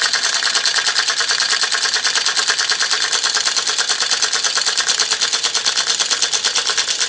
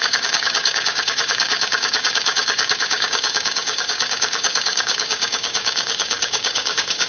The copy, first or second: second